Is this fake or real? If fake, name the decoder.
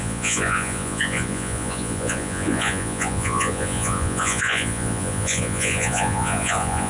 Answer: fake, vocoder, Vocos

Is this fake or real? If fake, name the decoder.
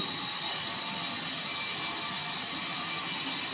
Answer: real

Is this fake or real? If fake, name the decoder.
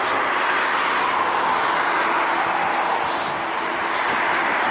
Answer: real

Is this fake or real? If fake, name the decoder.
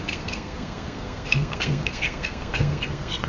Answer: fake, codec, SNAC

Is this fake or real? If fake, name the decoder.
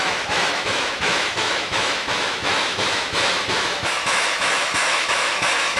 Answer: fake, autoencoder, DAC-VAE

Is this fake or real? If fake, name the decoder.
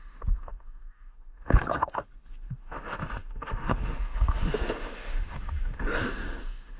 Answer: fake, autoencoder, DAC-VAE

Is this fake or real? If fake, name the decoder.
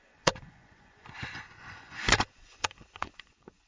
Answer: fake, vocoder, Vocos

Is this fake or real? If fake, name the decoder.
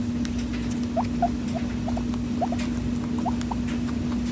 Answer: real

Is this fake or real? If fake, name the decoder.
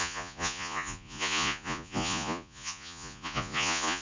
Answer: fake, vocoder, Vocos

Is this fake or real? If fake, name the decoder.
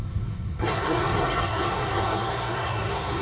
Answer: fake, codec, SNAC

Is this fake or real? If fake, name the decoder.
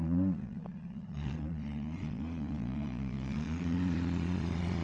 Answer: fake, vocoder, Vocos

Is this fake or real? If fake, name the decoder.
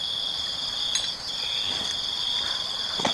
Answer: real